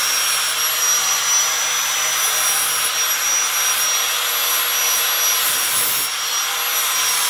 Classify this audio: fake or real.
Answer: real